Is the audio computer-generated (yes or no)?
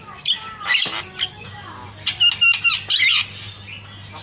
no